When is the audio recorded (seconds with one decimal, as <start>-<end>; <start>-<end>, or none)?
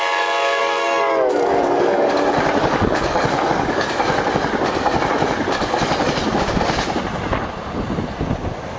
0.0-0.6; 2.1-2.6; 3.9-8.8